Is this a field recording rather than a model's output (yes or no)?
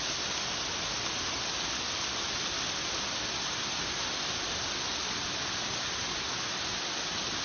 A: yes